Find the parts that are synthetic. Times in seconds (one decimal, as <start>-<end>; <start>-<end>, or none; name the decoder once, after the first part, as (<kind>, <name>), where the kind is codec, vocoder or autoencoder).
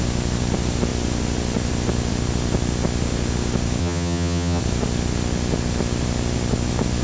3.8-4.6 (vocoder, HiFi-GAN)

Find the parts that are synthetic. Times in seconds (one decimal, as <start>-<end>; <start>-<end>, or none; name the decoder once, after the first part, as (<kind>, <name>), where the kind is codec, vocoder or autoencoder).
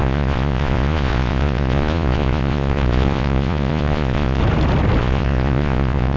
0.0-4.4 (vocoder, Vocos); 5.0-6.2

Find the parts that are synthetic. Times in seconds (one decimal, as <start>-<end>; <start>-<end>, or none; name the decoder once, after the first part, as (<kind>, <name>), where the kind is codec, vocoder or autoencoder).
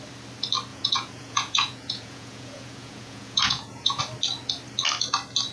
0.7-4.0 (vocoder, Vocos)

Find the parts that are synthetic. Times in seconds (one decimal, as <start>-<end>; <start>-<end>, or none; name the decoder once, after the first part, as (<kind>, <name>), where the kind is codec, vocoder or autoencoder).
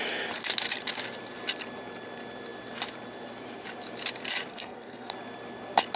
4.5-5.1 (codec, SNAC)